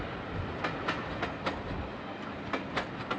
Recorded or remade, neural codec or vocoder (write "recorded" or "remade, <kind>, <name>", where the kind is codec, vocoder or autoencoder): recorded